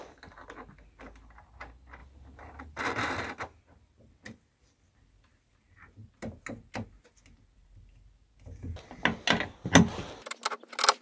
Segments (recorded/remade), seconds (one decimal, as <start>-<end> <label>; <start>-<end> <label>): 0.0-11.0 recorded